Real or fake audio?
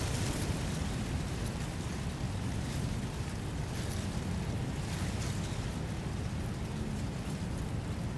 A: real